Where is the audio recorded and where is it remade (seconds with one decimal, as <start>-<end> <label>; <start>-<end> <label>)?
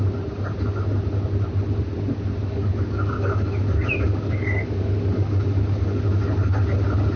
0.0-2.4 recorded; 2.4-6.0 remade; 6.0-7.2 recorded